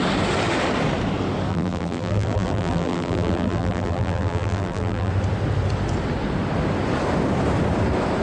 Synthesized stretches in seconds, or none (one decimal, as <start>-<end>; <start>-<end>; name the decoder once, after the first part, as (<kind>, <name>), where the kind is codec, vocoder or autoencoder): 1.5-5.1 (vocoder, BigVGAN v2)